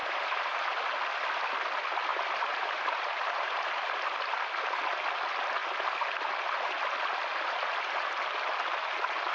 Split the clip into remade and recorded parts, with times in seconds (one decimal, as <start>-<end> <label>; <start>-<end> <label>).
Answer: 0.0-0.8 remade; 0.8-2.1 recorded; 2.1-3.6 remade; 3.6-9.3 recorded